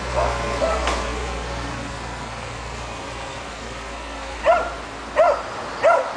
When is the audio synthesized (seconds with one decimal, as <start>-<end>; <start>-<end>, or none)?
0.0-4.4